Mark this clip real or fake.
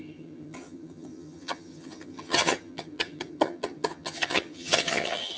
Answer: fake